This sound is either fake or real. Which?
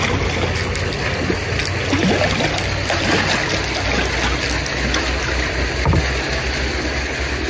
real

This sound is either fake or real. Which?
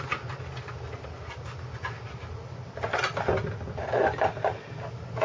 real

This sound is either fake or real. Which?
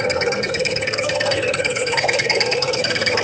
fake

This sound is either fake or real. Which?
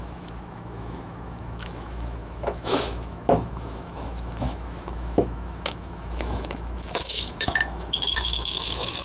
fake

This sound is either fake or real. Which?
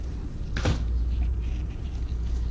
real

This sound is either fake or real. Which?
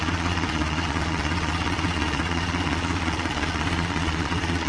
fake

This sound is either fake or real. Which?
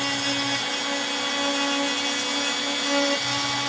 real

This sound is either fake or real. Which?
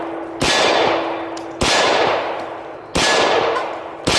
real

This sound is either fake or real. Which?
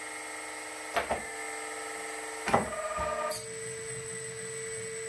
real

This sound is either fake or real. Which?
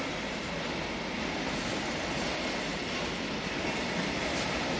real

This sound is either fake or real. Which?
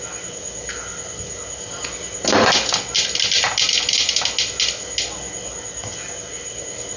real